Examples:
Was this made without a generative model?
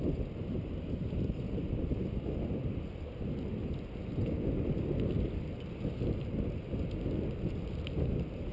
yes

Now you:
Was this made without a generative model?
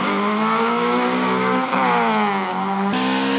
no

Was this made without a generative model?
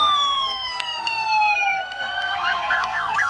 no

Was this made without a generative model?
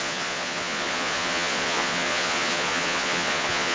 no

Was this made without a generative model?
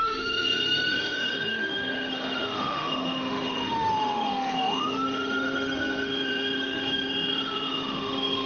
no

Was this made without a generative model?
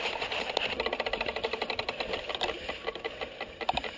yes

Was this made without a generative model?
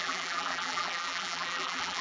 no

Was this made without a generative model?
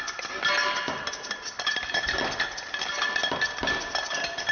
yes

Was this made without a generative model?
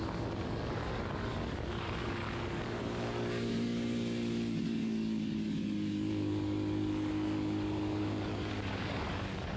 no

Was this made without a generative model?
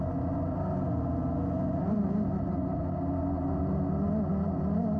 yes